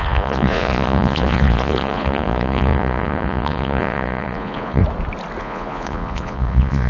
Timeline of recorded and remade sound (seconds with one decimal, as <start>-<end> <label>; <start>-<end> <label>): 0.0-4.8 remade; 4.8-5.4 recorded; 5.4-6.9 remade